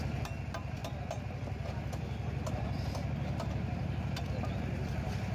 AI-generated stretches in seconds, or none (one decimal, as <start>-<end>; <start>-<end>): none